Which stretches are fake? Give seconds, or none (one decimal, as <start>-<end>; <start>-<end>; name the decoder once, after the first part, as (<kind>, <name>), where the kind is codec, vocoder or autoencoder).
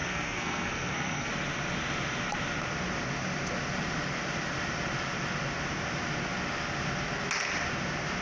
0.0-1.3 (codec, SNAC)